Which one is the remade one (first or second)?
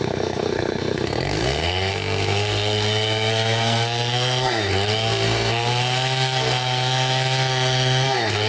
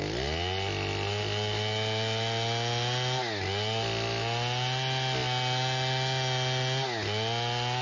first